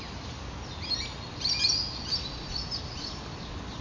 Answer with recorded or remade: recorded